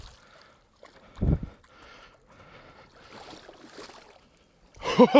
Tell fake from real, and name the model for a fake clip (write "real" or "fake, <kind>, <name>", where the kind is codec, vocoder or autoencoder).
real